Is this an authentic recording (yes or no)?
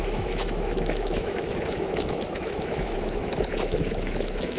no